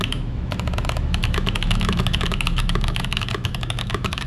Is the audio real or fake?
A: fake